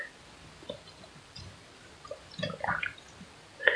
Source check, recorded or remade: recorded